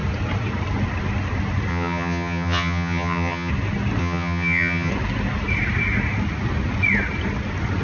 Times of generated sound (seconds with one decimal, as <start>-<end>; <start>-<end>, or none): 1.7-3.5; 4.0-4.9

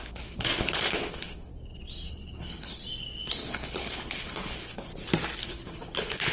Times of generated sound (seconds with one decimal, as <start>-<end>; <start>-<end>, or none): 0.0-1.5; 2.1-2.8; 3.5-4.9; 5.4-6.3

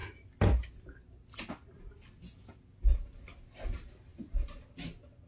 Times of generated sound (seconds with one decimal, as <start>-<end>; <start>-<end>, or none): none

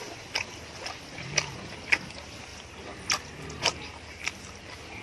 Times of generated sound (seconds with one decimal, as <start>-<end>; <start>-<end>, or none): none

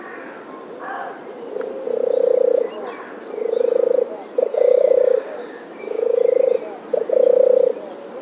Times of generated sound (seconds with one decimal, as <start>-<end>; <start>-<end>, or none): 4.4-6.2